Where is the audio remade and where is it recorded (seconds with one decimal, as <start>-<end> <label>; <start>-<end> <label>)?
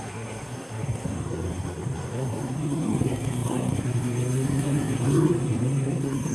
0.0-6.3 remade